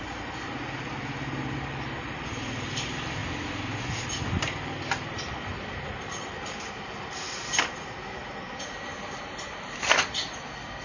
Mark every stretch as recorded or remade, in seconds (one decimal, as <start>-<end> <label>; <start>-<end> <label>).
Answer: 0.0-10.8 recorded